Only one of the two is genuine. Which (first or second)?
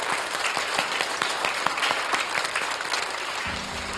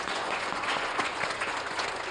first